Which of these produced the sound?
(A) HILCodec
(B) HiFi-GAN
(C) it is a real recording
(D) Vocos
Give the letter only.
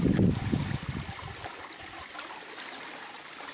C